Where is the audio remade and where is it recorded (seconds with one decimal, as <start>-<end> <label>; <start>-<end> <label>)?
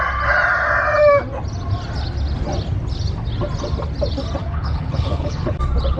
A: 0.0-4.4 recorded; 4.4-5.6 remade; 5.6-6.0 recorded